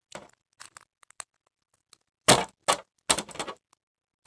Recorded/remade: recorded